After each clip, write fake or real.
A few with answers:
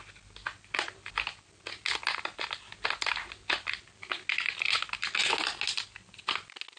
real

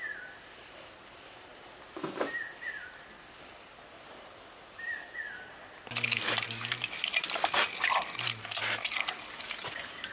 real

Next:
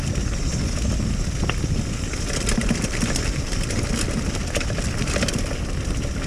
real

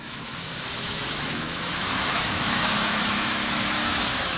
fake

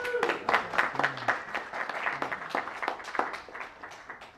real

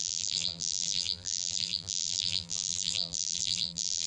fake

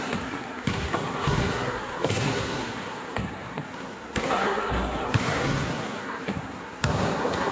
fake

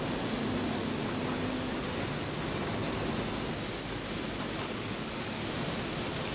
real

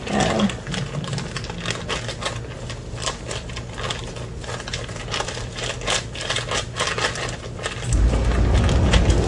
real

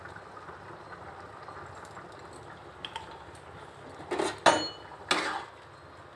real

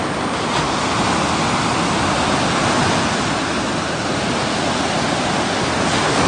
real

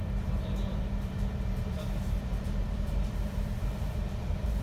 fake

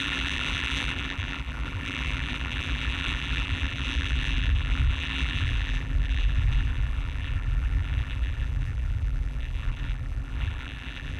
fake